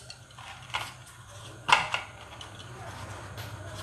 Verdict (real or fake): fake